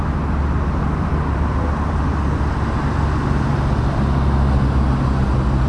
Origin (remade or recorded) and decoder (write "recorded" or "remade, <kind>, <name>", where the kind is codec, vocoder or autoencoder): recorded